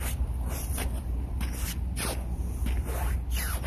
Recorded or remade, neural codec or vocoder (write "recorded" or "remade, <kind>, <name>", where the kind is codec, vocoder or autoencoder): recorded